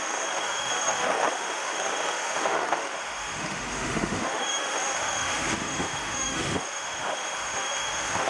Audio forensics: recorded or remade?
remade